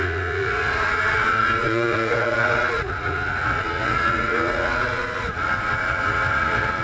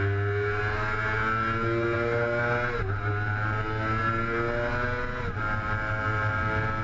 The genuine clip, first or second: second